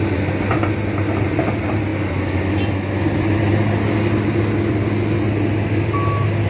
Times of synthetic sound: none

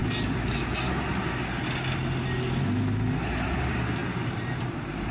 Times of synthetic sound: 3.1-5.1 (vocoder, BigVGAN v2)

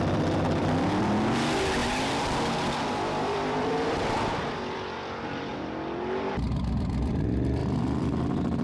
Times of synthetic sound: 0.0-1.8 (vocoder, BigVGAN v2); 2.9-5.5; 6.3-8.6

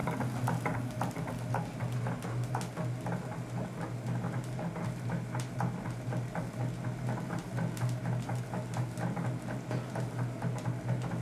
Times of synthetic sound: none

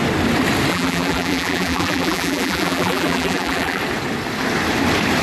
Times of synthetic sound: 0.7-3.8 (vocoder, BigVGAN v2)

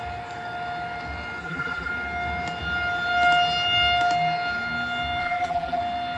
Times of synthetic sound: 1.4-1.9 (vocoder, BigVGAN v2); 5.2-5.8